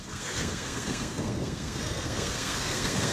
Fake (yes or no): yes